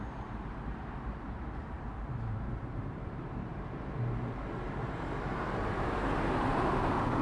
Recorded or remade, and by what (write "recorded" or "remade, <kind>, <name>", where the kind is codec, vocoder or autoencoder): remade, vocoder, BigVGAN v2